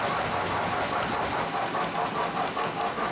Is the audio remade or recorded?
remade